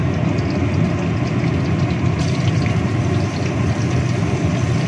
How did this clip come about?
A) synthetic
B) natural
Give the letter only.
B